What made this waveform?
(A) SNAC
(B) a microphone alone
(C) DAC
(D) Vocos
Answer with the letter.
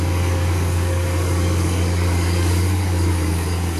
C